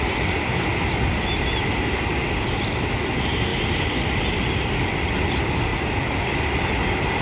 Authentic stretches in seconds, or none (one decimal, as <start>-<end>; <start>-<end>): 0.0-7.2